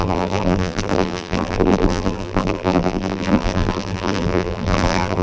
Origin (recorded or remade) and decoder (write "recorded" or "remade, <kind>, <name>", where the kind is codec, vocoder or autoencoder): remade, vocoder, BigVGAN v2